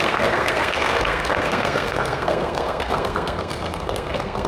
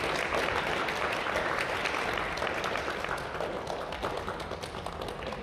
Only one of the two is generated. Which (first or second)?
first